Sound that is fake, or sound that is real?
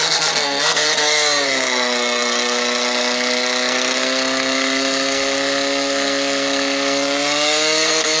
fake